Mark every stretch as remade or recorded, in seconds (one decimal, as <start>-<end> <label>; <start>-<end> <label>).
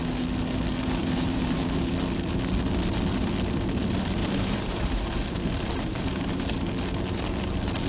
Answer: 0.0-1.0 recorded; 1.0-1.9 remade; 1.9-4.2 recorded; 4.2-6.7 remade; 6.7-7.9 recorded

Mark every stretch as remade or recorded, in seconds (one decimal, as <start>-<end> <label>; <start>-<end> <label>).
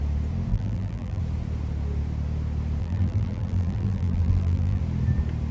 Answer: 0.0-0.5 recorded; 0.5-1.2 remade; 1.2-2.8 recorded; 2.8-4.8 remade; 4.8-5.5 recorded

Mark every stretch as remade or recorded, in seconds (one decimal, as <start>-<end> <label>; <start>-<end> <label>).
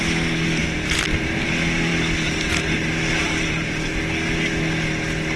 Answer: 0.0-0.6 recorded; 0.6-1.5 remade; 1.5-3.2 recorded; 3.2-4.0 remade; 4.0-5.4 recorded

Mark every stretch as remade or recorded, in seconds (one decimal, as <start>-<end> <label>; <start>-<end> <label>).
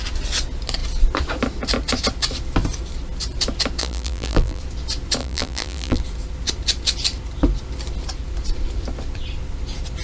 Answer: 0.0-3.8 recorded; 3.8-4.6 remade; 4.6-5.2 recorded; 5.2-6.0 remade; 6.0-10.0 recorded